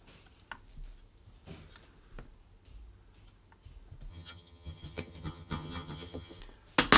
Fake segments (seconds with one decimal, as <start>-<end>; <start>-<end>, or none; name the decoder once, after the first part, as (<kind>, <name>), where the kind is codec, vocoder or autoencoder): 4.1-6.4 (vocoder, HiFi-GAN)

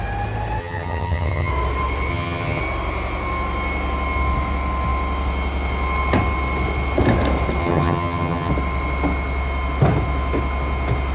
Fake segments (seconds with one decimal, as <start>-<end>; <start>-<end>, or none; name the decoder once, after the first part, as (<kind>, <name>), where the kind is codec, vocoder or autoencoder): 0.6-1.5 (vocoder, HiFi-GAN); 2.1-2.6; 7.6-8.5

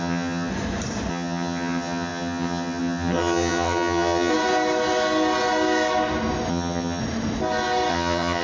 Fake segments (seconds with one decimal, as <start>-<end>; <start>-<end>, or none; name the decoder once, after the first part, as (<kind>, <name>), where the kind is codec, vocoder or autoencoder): 0.0-0.5 (vocoder, HiFi-GAN); 1.1-4.3; 6.5-7.0; 7.9-8.4

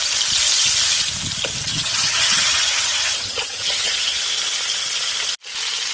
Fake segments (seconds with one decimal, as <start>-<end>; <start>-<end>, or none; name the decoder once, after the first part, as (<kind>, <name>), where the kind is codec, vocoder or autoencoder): 1.7-4.2 (vocoder, HiFi-GAN)

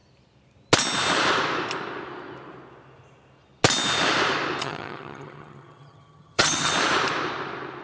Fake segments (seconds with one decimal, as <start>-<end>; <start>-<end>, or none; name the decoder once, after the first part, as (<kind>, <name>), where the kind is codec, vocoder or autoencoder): 4.6-6.7 (vocoder, HiFi-GAN)